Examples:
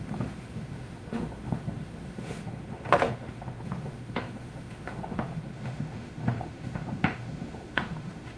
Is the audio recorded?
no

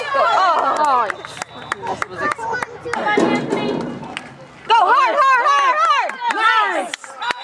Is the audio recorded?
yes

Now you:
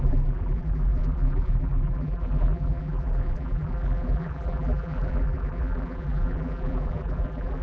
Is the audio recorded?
no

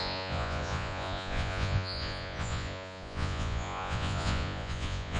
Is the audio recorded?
no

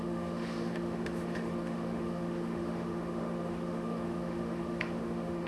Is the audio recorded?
no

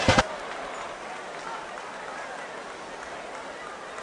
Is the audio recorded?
yes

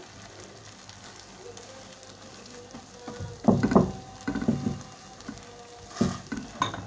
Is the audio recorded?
yes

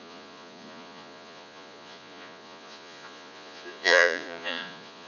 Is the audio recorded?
no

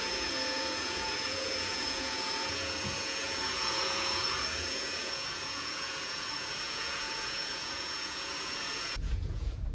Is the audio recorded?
no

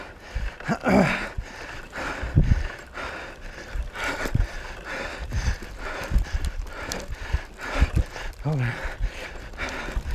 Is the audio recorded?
yes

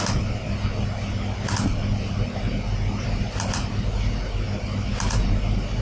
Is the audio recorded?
yes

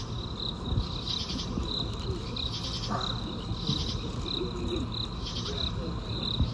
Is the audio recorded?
yes